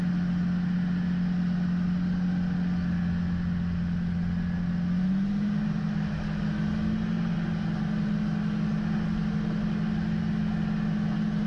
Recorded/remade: recorded